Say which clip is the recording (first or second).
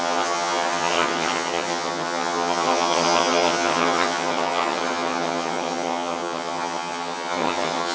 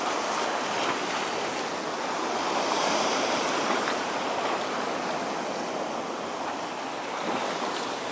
second